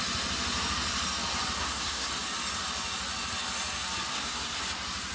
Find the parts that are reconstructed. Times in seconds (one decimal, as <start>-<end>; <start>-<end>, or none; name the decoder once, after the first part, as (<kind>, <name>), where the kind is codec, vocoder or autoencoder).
1.6-2.1 (codec, SNAC); 4.1-4.6